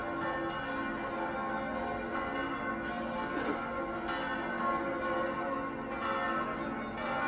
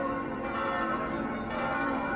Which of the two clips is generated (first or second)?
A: second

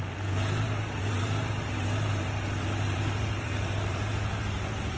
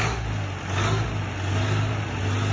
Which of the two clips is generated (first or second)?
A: first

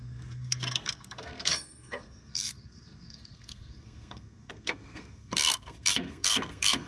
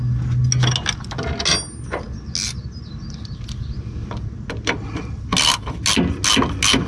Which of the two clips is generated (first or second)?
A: first